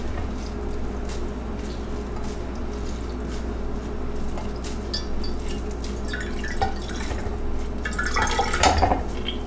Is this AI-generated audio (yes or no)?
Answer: no